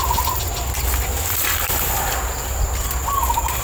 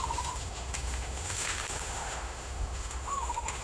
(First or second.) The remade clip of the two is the second